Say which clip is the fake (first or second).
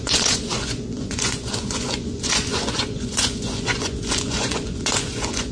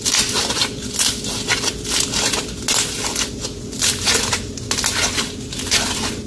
first